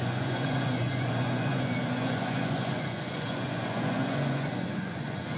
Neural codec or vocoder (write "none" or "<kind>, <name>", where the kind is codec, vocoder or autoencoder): vocoder, Vocos